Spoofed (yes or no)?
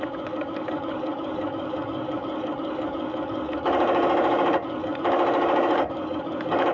yes